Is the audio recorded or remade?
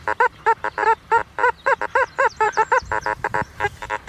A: remade